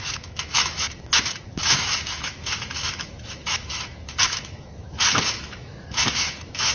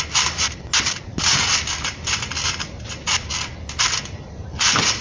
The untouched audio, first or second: second